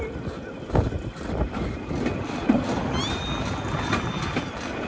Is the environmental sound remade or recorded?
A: recorded